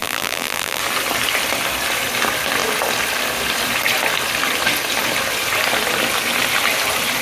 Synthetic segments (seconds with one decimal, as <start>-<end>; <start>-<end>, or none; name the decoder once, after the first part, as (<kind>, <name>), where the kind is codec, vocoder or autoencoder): 0.0-0.8 (vocoder, BigVGAN v2)